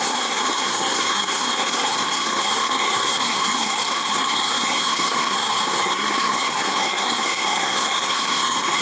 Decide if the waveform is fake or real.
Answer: fake